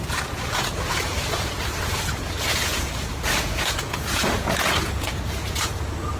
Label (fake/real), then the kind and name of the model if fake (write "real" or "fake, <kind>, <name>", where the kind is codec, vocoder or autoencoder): fake, vocoder, Vocos